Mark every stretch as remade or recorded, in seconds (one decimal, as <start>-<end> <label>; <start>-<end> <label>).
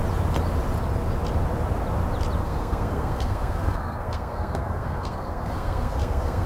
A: 0.0-2.4 recorded; 2.4-6.5 remade